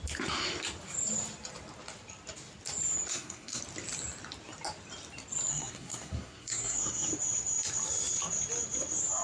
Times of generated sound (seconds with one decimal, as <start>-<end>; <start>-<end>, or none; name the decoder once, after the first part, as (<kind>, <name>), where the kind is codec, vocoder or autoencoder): 3.1-3.6 (codec, SNAC); 5.5-7.1